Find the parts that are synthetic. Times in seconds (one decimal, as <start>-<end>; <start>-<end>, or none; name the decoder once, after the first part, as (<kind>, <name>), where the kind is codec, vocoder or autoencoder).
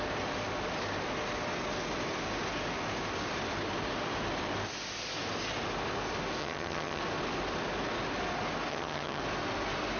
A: 6.4-7.0 (vocoder, HiFi-GAN); 8.7-9.2